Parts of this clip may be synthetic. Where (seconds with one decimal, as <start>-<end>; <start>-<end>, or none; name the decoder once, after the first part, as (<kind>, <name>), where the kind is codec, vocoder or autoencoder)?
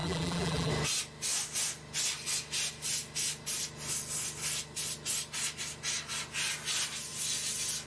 0.0-0.7 (vocoder, BigVGAN v2)